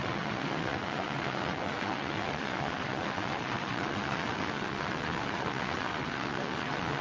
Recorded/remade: remade